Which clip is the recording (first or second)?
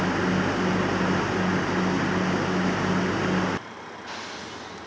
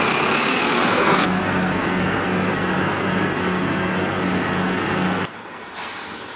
first